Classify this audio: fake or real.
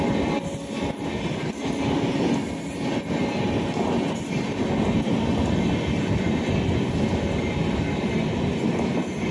real